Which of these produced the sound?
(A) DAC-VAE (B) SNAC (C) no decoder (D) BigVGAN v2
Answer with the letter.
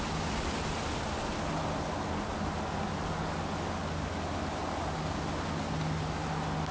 C